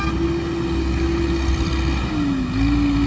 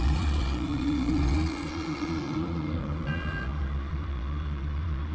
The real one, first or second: first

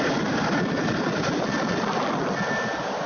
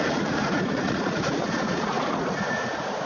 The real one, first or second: first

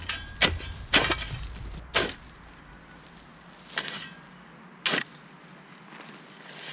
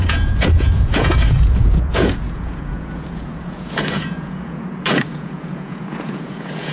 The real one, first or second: first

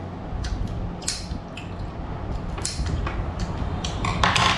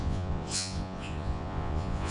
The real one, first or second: first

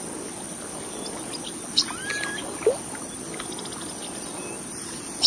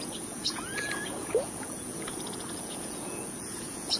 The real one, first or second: first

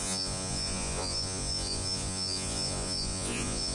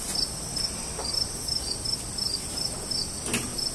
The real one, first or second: second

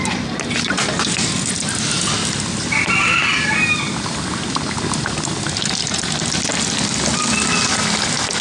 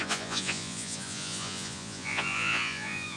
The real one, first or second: first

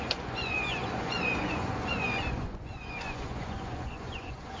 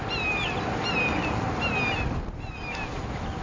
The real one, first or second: second